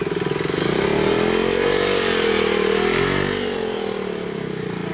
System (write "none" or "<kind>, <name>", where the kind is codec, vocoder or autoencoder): none